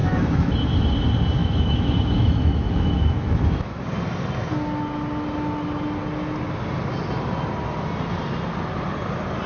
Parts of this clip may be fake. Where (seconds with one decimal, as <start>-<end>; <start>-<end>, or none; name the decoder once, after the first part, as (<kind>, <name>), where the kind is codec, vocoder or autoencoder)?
0.0-0.5 (autoencoder, DAC-VAE); 1.4-3.8